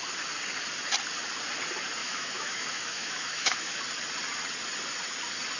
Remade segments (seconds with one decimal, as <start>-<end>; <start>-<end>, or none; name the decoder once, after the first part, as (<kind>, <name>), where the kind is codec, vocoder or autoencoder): 2.0-3.8 (autoencoder, DAC-VAE)